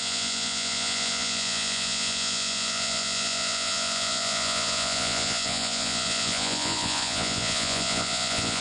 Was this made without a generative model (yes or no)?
no